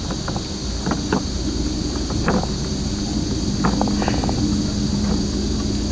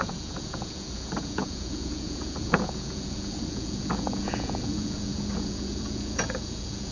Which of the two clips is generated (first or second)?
second